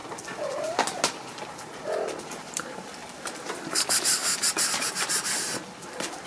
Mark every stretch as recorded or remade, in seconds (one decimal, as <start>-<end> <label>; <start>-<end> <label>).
0.0-2.3 recorded; 2.3-3.0 remade; 3.0-3.5 recorded; 3.5-4.2 remade; 4.2-5.8 recorded; 5.8-6.3 remade